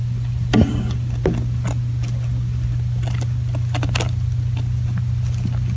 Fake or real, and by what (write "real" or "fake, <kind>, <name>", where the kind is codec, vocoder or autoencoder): real